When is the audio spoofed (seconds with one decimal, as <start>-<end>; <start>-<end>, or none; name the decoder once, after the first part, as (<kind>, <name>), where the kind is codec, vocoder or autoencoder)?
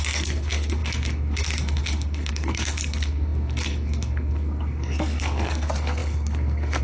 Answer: 0.0-6.8 (codec, SNAC)